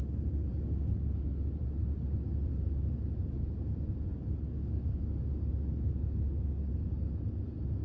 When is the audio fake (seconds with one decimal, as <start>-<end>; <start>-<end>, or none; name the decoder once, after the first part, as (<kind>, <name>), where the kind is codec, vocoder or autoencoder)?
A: 0.5-1.6 (codec, DAC); 4.1-5.0